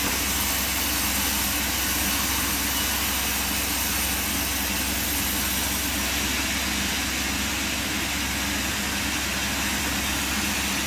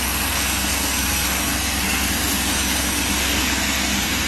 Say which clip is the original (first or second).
first